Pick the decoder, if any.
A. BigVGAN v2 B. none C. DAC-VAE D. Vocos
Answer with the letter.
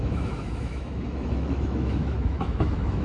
C